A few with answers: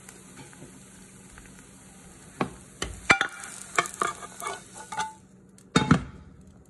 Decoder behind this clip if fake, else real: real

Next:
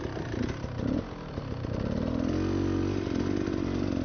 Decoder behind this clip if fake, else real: real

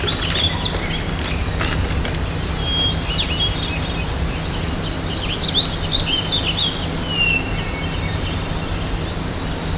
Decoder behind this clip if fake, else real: real